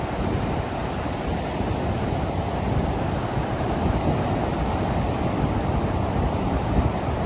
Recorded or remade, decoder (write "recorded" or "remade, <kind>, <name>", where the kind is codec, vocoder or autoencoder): recorded